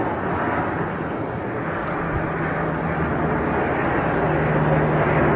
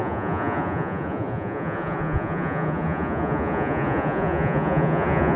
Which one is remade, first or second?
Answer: second